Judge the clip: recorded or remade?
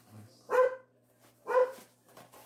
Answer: remade